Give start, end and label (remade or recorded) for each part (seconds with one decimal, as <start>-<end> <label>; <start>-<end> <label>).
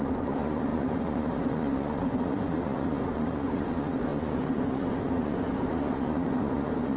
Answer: 0.0-7.0 remade